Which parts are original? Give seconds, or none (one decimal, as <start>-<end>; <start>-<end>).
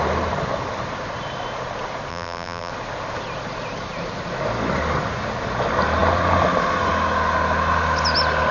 0.0-2.1; 2.7-8.5